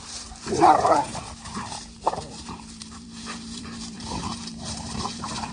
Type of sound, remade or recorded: remade